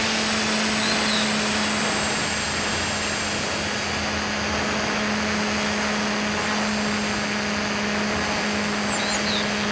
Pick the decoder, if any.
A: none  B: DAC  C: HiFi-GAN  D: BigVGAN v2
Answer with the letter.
A